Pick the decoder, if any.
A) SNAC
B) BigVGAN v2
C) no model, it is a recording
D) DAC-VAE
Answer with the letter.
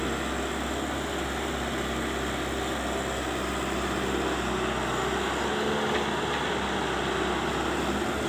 C